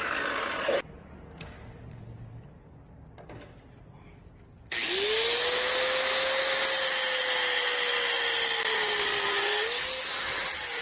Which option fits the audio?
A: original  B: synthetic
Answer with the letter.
A